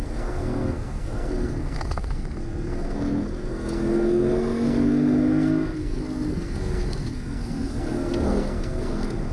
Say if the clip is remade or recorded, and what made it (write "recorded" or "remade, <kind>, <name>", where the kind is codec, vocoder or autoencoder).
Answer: remade, codec, SNAC